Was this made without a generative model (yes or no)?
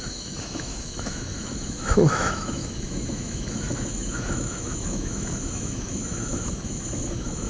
no